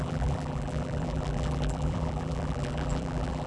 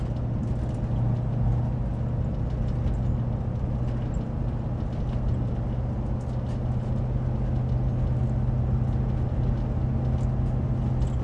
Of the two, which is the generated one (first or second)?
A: first